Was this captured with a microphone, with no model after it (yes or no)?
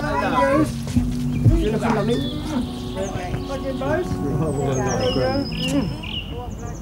yes